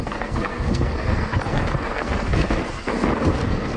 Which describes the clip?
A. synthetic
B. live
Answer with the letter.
A